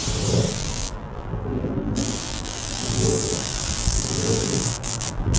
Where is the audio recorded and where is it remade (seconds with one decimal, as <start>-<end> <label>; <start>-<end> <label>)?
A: 0.0-0.5 recorded; 0.5-5.4 remade